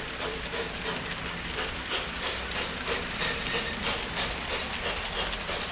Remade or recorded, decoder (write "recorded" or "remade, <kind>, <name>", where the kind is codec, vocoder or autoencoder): recorded